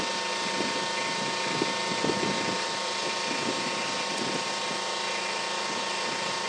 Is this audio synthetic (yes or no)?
no